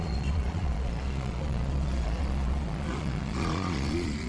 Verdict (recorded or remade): remade